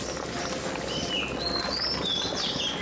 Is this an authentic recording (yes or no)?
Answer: yes